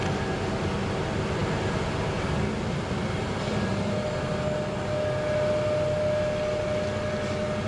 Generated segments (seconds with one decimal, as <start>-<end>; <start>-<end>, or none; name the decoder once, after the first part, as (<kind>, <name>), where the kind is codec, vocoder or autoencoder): none